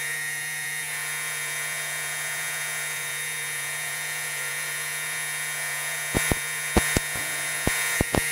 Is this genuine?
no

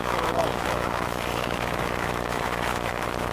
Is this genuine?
no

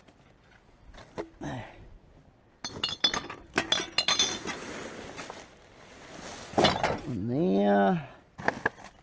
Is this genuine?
yes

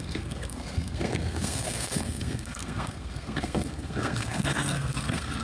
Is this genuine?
no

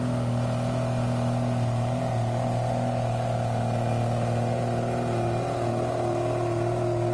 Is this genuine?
yes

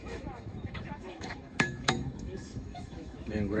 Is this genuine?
no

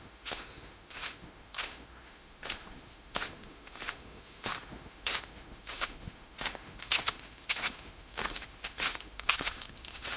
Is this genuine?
no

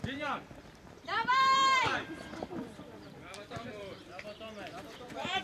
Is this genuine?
no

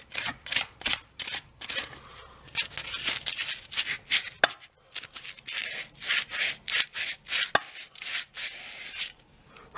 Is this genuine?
yes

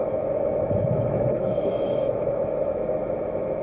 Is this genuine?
no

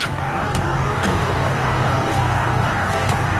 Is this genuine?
no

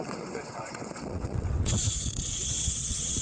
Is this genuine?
no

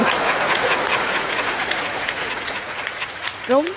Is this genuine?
no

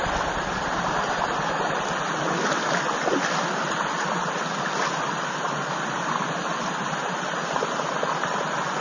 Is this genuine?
yes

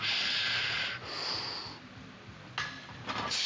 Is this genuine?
yes